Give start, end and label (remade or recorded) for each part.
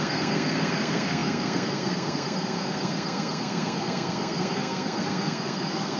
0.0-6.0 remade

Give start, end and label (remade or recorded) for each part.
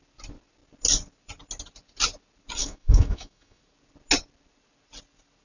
0.0-2.6 recorded; 2.6-3.6 remade; 3.6-5.4 recorded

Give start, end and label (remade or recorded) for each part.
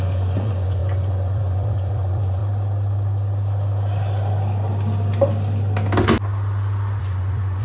0.0-2.4 remade; 2.4-7.0 recorded; 7.0-7.6 remade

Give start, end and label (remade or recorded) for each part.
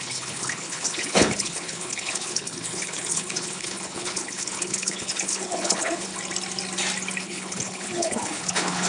0.0-6.1 remade; 6.1-7.2 recorded; 7.2-8.9 remade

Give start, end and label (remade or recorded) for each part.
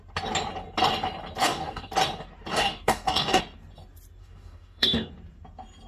0.0-1.4 recorded; 1.4-1.9 remade; 1.9-2.5 recorded; 2.5-3.4 remade; 3.4-4.2 recorded; 4.2-5.1 remade; 5.1-5.9 recorded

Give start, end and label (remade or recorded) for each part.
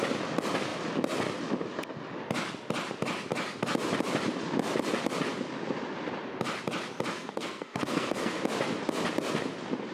0.0-7.1 recorded; 7.1-8.4 remade; 8.4-9.9 recorded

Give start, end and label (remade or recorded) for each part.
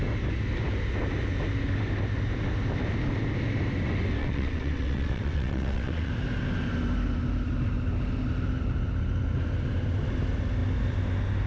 0.0-4.2 recorded; 4.2-6.1 remade; 6.1-11.5 recorded